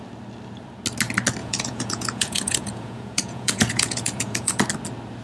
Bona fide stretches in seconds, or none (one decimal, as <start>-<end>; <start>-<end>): 0.0-1.4; 4.5-5.2